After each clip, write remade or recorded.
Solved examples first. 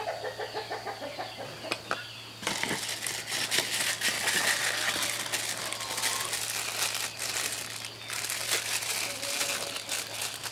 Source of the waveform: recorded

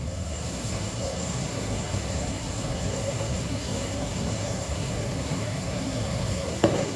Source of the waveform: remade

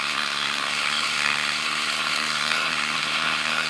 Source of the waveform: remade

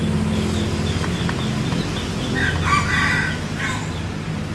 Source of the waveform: recorded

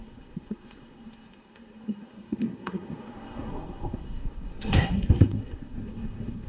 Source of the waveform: remade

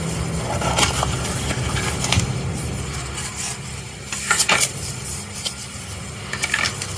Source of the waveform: recorded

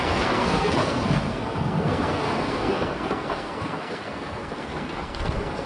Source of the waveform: remade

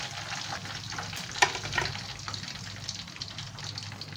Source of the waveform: recorded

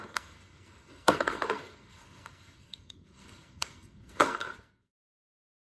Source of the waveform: remade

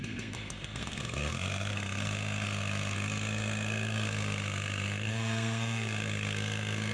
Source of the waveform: remade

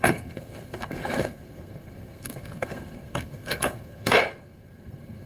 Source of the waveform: remade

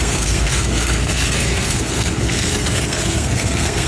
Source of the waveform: remade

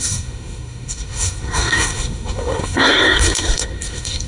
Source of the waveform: remade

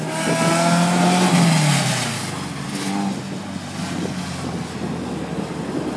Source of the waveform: recorded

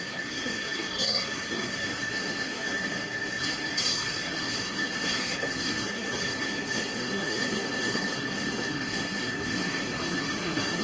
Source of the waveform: remade